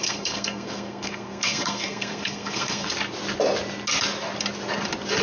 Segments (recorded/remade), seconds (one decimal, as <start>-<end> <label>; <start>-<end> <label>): 0.0-2.9 remade; 2.9-5.2 recorded